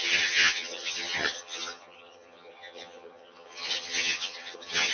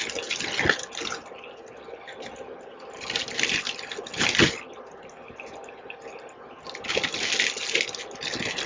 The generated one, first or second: first